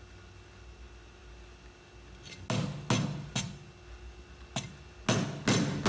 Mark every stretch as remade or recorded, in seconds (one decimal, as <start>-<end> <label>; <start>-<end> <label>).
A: 0.0-5.9 recorded